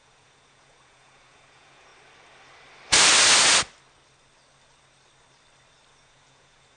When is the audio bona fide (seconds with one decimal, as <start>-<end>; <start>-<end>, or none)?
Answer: 1.9-6.0